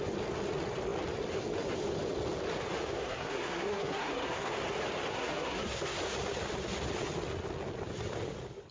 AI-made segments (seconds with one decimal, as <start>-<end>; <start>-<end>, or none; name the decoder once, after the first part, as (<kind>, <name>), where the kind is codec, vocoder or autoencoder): 2.9-4.5 (codec, SNAC); 5.1-6.0